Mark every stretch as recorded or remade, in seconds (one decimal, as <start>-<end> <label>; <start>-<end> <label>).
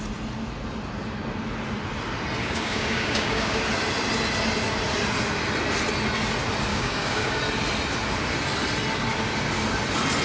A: 0.0-2.4 recorded; 2.4-3.6 remade; 3.6-6.7 recorded; 6.7-7.4 remade; 7.4-10.2 recorded